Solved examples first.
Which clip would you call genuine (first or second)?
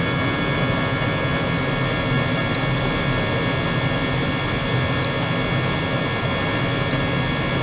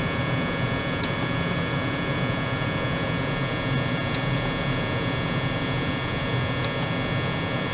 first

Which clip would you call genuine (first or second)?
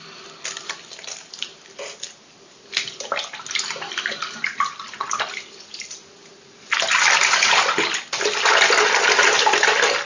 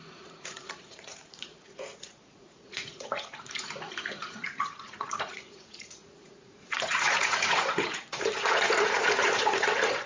first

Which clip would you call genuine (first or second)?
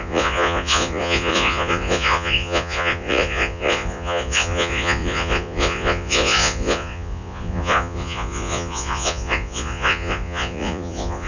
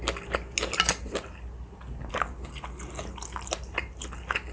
second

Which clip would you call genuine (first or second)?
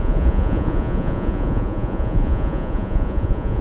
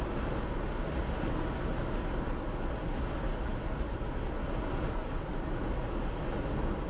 second